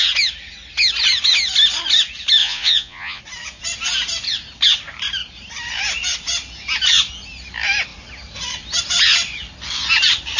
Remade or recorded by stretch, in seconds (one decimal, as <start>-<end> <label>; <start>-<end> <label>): 0.0-2.4 recorded; 2.4-3.2 remade; 3.2-10.4 recorded